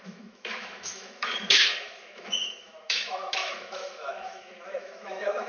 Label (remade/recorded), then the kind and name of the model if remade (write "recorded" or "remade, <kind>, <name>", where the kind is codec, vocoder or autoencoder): remade, autoencoder, DAC-VAE